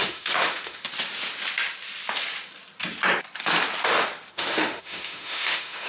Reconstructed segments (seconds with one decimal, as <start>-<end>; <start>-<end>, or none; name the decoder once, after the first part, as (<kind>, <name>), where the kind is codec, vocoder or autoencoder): 0.0-0.8 (autoencoder, DAC-VAE); 4.3-5.9